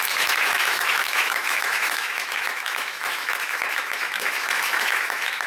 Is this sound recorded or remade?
remade